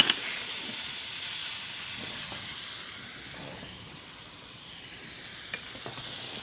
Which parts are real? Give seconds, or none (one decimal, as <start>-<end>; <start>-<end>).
0.0-3.4; 5.0-6.4